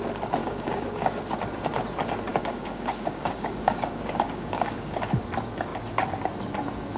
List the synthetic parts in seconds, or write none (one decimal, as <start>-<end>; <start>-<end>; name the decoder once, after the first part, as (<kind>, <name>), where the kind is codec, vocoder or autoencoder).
0.4-1.2 (codec, DAC); 2.3-5.2